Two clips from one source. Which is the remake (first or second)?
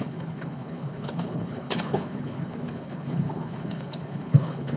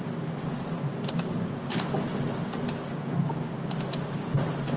first